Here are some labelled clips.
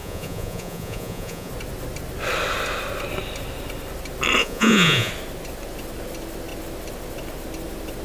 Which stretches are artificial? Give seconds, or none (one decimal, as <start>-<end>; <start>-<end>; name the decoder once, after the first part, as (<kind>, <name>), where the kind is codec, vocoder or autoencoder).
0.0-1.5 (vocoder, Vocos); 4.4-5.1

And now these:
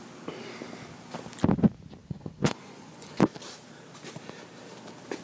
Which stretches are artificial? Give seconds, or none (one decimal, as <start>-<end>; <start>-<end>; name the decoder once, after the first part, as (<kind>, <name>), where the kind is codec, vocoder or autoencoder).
2.0-3.2 (vocoder, Vocos)

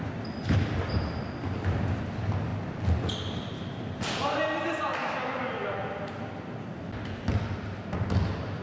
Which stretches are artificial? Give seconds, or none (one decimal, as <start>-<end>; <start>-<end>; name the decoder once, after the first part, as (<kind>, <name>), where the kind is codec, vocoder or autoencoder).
none

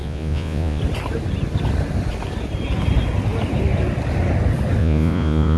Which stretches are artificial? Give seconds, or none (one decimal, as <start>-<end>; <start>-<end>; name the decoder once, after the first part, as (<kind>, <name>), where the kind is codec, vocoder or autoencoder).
0.0-0.8 (vocoder, Vocos); 4.8-5.6

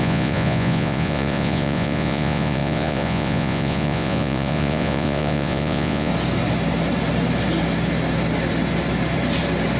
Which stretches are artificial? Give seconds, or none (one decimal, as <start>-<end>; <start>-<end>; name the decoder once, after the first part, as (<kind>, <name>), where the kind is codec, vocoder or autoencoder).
0.0-6.1 (vocoder, Vocos)

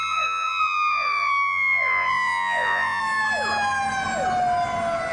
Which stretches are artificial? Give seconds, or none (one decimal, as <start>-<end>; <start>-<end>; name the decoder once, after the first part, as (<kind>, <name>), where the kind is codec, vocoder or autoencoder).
0.0-3.0 (vocoder, Vocos)

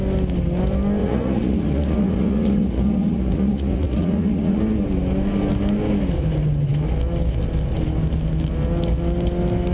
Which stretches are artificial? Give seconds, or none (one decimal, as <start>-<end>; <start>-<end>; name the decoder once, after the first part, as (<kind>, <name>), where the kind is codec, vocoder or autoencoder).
1.0-4.6 (vocoder, Vocos)

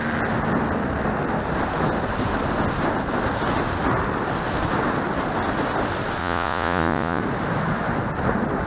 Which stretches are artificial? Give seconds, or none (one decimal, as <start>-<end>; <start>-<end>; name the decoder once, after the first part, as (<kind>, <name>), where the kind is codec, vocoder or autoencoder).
6.2-7.2 (vocoder, Vocos)